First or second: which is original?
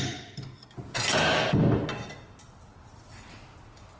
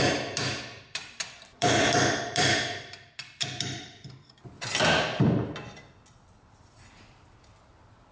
first